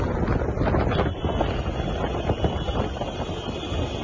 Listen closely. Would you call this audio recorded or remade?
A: recorded